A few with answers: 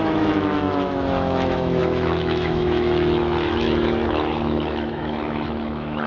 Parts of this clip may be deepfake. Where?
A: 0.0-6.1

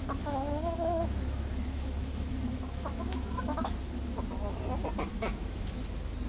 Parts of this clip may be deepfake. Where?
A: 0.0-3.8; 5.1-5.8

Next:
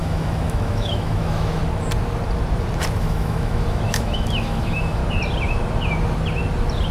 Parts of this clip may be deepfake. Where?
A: 0.0-1.6; 3.0-5.0

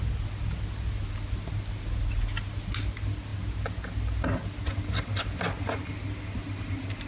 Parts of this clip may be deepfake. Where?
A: none

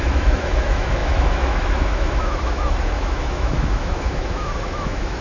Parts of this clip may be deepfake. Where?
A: 0.0-5.2